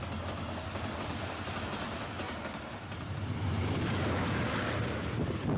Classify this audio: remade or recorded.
remade